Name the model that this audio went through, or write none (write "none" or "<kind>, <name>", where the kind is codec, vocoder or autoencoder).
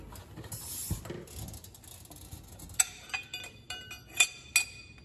none